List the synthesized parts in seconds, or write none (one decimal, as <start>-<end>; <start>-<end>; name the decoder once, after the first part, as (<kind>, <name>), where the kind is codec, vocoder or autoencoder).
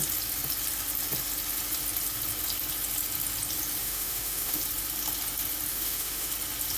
3.8-4.6 (autoencoder, DAC-VAE); 5.7-6.3